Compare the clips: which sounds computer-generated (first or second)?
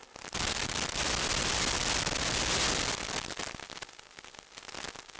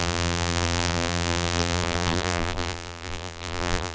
second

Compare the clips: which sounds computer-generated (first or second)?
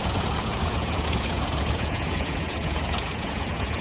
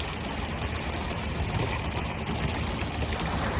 first